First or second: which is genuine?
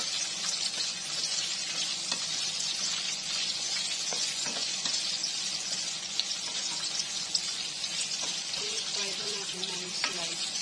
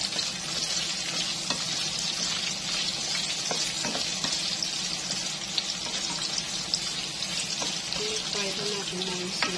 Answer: second